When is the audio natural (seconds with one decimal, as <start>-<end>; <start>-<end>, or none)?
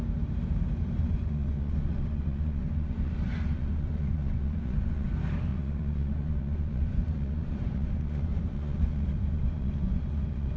0.0-1.0; 5.1-5.5